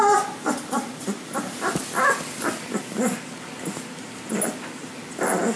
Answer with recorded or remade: recorded